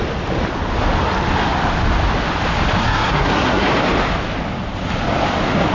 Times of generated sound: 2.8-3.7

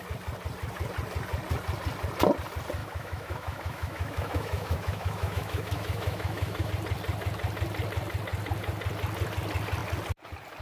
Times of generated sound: 2.8-6.7

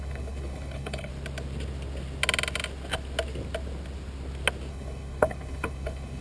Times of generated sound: 0.0-1.1; 4.7-6.2

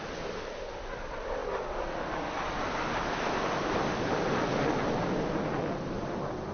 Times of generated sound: 1.4-4.5

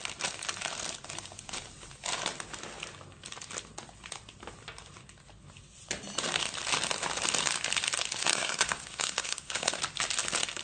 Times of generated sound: 8.2-9.8